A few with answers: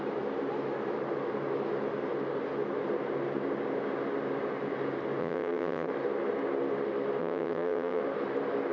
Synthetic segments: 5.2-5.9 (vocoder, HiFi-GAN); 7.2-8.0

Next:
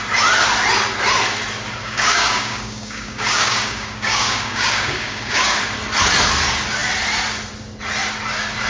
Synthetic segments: 1.8-5.6 (codec, DAC)

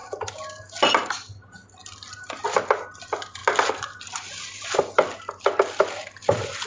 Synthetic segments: none

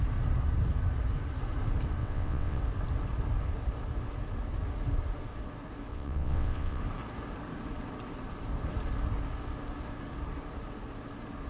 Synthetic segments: 2.0-2.6 (vocoder, WaveNeXt); 5.9-6.8

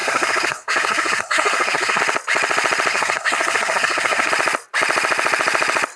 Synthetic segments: 0.0-2.0 (codec, SNAC); 2.9-4.3